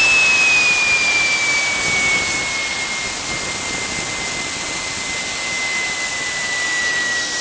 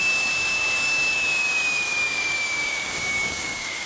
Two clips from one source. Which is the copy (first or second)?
second